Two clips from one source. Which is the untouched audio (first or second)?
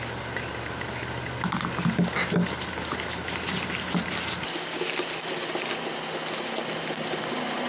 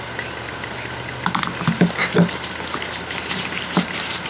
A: first